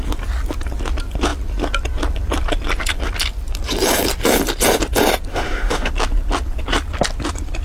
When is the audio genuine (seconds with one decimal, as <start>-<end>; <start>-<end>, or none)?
0.0-5.3; 5.9-7.6